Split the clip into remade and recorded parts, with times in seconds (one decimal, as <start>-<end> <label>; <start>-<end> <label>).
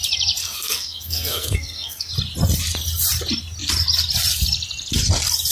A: 0.0-0.4 recorded; 0.4-2.1 remade; 2.1-5.5 recorded